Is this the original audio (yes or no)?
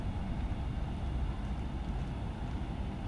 yes